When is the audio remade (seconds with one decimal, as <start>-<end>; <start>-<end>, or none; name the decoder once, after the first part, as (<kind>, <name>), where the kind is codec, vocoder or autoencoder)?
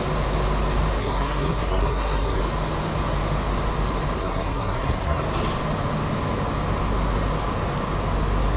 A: 1.0-2.4 (codec, SNAC); 4.2-5.2